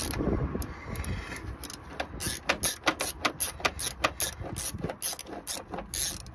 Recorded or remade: recorded